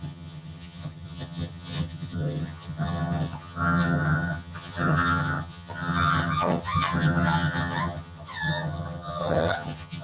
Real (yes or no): no